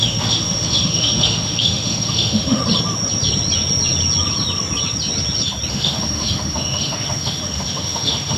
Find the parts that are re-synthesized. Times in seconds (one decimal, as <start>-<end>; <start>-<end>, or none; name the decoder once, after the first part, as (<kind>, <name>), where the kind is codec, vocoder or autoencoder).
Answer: 0.0-2.6 (autoencoder, DAC-VAE); 5.7-8.4